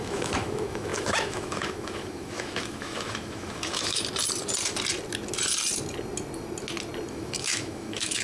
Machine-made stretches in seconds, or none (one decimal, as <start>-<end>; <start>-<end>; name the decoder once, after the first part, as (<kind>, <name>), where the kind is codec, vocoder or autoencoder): 0.0-4.0 (autoencoder, DAC-VAE); 7.1-8.2